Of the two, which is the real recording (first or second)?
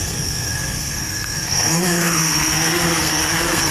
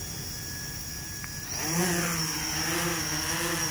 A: second